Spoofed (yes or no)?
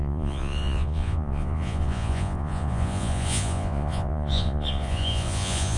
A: yes